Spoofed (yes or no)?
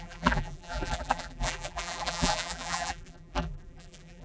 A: yes